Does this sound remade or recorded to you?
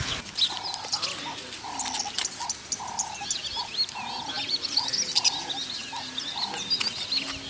recorded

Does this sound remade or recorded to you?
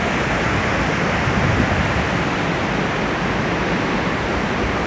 recorded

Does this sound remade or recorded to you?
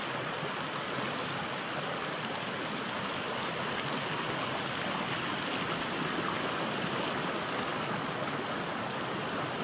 recorded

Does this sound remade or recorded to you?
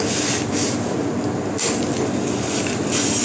recorded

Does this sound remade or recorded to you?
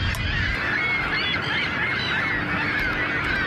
recorded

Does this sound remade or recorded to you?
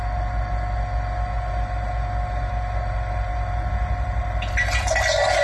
recorded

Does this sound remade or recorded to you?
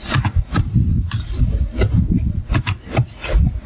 remade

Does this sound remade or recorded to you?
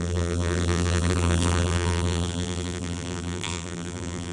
remade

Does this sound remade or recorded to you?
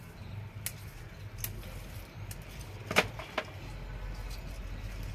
recorded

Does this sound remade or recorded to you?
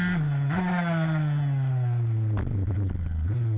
recorded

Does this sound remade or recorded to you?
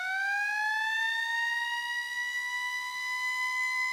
recorded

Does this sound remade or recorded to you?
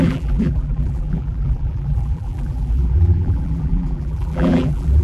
remade